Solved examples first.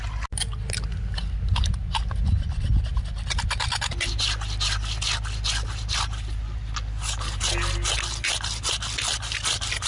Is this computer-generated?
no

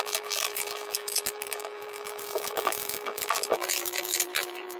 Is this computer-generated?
yes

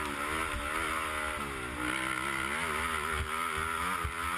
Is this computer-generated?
no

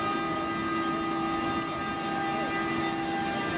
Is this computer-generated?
no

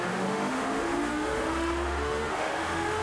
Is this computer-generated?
yes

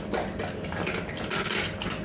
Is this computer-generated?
no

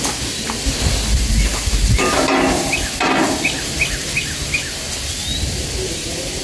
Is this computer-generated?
no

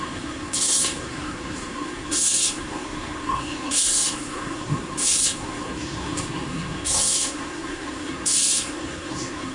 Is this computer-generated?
yes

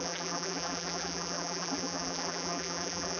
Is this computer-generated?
yes